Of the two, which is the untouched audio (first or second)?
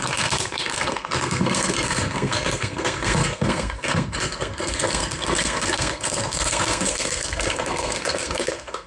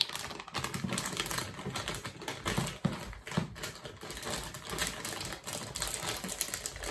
second